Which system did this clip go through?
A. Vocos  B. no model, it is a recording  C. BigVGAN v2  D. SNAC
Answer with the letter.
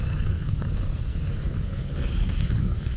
D